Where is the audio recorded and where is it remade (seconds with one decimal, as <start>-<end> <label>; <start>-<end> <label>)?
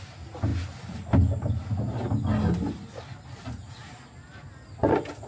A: 0.0-5.3 recorded